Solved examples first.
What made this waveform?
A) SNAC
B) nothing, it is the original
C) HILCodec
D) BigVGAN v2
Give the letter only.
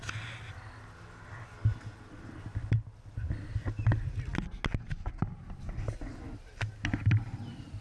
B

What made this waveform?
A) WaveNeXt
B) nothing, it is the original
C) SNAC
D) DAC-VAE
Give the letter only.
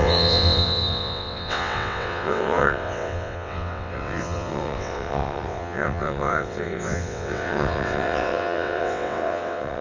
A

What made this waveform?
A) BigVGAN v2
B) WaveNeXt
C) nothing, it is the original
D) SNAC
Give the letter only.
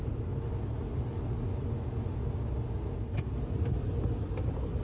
C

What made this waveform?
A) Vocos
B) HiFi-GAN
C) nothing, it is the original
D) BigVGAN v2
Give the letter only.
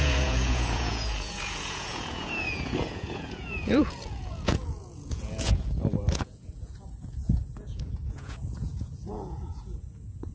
A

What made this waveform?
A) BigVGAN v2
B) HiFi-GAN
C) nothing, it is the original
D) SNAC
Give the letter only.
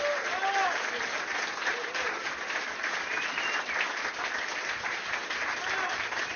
C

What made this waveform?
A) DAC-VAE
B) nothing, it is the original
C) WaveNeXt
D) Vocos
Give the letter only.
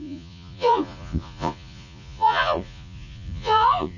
D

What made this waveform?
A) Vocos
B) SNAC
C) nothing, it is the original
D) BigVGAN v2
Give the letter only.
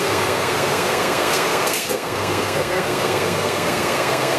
B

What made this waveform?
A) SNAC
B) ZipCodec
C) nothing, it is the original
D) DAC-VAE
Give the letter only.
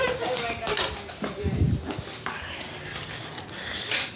C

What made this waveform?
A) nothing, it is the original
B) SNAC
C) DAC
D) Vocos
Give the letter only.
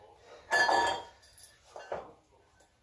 A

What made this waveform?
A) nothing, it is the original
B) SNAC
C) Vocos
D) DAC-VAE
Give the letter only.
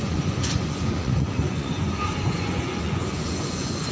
C